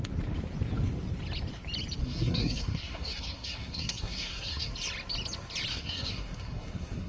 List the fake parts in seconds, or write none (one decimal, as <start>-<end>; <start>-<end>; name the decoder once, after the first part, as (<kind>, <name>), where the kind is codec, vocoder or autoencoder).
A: 2.0-4.7 (codec, SNAC); 5.7-7.1